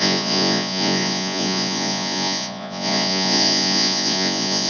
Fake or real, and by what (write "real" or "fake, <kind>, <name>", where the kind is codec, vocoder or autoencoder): fake, vocoder, Vocos